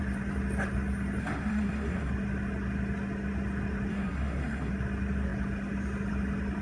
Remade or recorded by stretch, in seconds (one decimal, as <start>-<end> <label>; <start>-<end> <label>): 0.0-1.2 recorded; 1.2-2.1 remade; 2.1-3.9 recorded; 3.9-4.7 remade; 4.7-6.6 recorded